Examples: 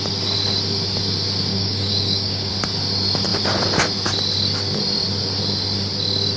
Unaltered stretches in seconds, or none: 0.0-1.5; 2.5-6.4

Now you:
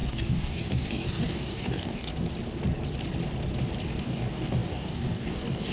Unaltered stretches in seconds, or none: 2.1-4.0

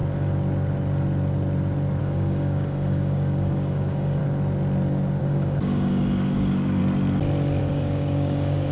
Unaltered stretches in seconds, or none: 0.0-2.0; 4.2-5.2; 6.8-7.6